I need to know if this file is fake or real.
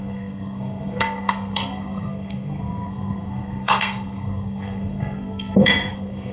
fake